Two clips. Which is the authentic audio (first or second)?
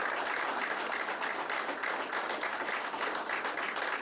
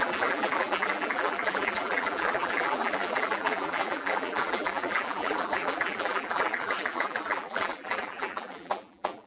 first